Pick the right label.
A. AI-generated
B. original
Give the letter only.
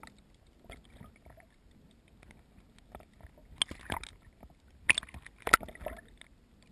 B